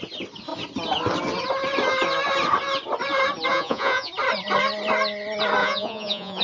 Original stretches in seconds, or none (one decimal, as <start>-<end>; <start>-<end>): 0.0-3.5; 4.1-5.6